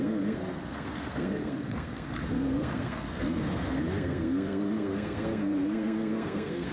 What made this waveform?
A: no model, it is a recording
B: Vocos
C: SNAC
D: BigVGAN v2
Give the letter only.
C